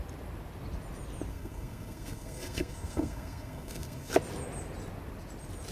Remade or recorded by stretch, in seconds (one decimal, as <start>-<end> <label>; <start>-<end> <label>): 0.0-1.3 recorded; 1.3-4.1 remade; 4.1-5.7 recorded